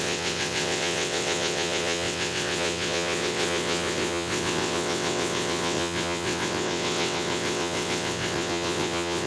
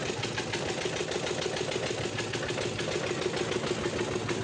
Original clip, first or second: second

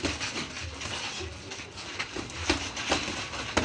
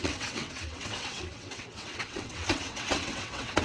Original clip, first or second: first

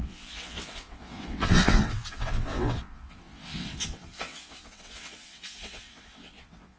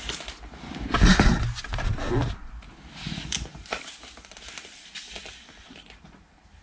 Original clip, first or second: second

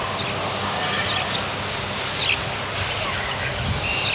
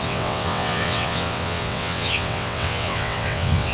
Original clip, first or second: first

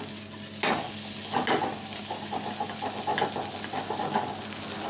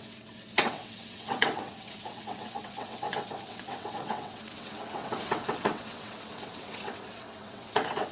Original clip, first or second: first